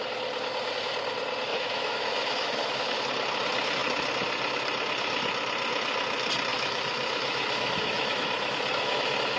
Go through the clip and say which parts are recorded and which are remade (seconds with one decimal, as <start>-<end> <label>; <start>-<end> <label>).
0.0-1.5 recorded; 1.5-3.0 remade; 3.0-6.5 recorded; 6.5-9.4 remade